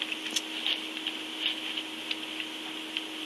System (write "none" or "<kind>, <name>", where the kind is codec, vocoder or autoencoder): none